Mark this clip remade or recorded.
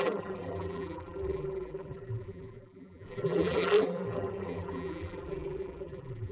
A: remade